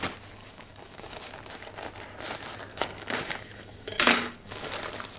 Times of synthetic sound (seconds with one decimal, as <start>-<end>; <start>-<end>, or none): 0.4-1.2; 2.7-4.7